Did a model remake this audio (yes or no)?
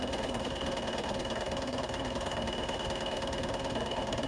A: yes